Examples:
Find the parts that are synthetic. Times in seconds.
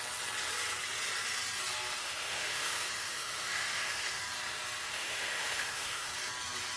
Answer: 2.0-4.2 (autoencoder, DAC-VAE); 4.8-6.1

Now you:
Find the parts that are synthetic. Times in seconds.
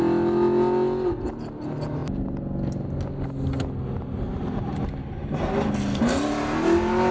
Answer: none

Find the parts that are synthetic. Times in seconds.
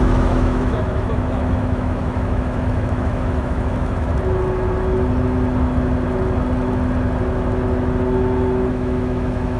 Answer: 0.0-4.1 (autoencoder, DAC-VAE); 8.7-9.6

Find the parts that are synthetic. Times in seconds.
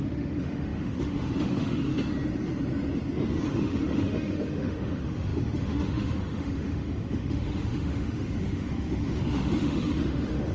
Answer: 0.0-1.9 (autoencoder, DAC-VAE); 3.5-10.5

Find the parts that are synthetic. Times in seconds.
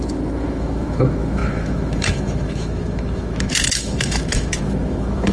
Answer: 0.0-5.3 (autoencoder, DAC-VAE)